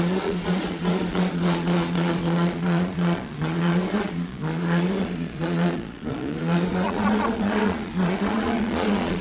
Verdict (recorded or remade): remade